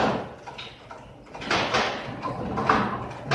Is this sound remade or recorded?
recorded